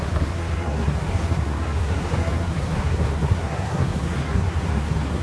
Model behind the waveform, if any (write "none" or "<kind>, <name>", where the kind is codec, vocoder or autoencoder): codec, SNAC